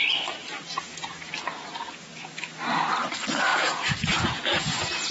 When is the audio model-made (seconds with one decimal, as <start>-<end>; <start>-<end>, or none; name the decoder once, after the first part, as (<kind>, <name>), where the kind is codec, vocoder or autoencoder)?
3.5-5.1 (vocoder, Vocos)